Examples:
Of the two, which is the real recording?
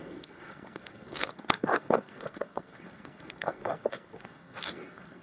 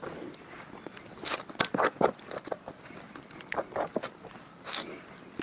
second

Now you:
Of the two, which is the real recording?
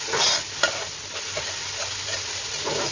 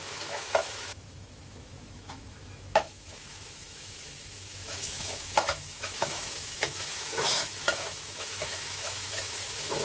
first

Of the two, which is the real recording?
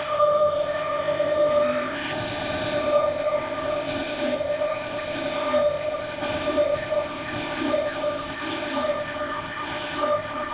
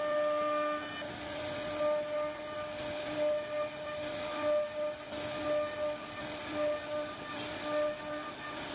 second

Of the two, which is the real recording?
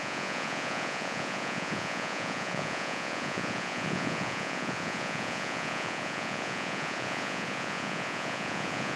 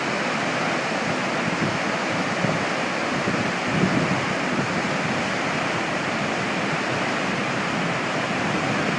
second